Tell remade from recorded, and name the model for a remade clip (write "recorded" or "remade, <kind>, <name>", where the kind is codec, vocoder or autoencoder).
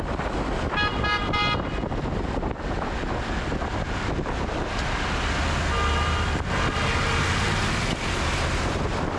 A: recorded